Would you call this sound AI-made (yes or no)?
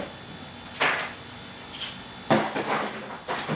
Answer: no